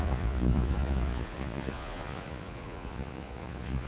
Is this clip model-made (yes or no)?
yes